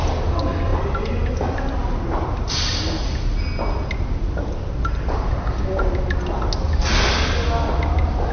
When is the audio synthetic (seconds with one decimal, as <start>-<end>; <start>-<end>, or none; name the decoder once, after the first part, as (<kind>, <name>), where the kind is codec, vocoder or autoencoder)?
none